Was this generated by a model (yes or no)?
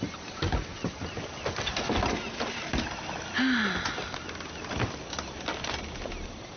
no